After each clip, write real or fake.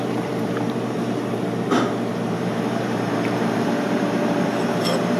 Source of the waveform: fake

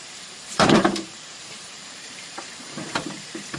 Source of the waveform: fake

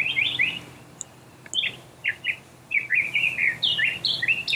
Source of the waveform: real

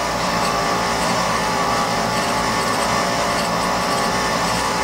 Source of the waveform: fake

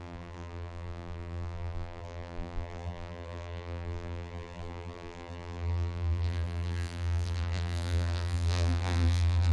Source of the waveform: fake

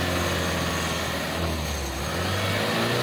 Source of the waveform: real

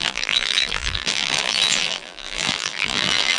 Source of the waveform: fake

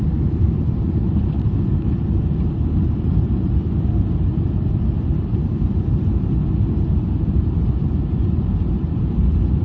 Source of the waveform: fake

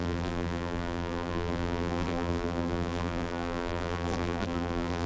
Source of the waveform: fake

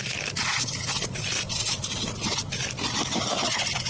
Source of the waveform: real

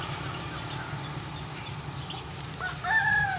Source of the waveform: real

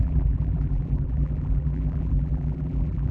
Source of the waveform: fake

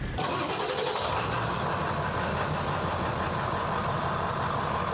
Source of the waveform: fake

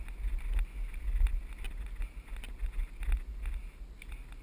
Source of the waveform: real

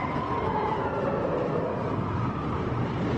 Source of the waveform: real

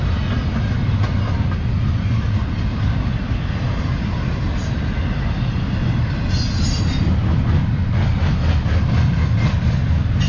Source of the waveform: real